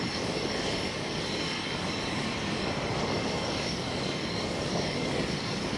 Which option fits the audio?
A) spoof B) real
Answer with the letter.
A